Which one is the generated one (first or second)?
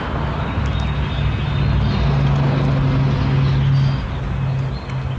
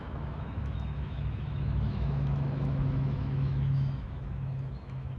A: second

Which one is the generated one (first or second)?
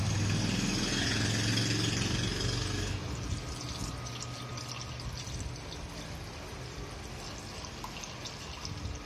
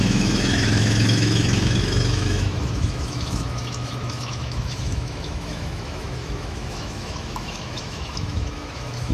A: second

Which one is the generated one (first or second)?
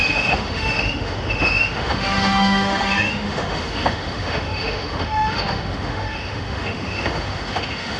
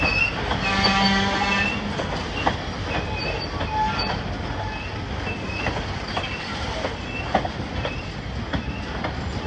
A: first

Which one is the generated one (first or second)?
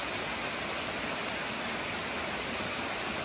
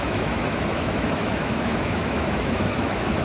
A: second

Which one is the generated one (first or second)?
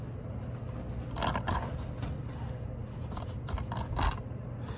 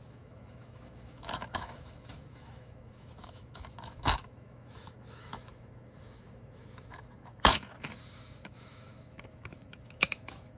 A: second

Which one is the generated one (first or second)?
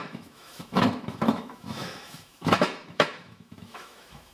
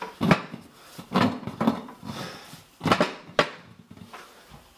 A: first